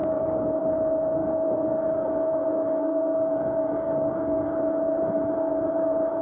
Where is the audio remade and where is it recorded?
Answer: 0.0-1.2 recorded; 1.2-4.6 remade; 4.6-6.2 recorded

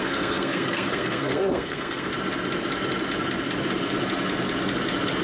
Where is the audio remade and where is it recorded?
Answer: 0.0-2.1 remade; 2.1-5.2 recorded

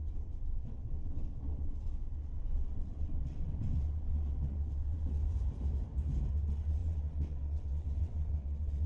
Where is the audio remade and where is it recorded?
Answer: 0.0-5.2 remade; 5.2-6.3 recorded; 6.3-8.9 remade

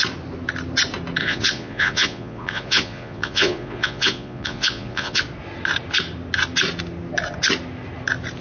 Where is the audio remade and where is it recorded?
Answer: 0.0-1.2 recorded; 1.2-5.2 remade; 5.2-8.4 recorded

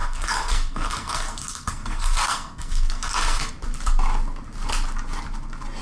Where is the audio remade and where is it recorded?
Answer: 0.0-3.5 remade; 3.5-5.8 recorded

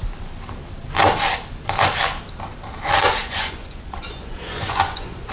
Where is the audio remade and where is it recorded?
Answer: 0.0-3.2 recorded; 3.2-5.3 remade

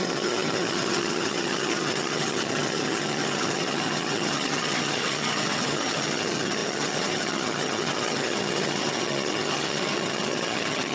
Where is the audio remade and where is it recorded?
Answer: 0.0-10.9 remade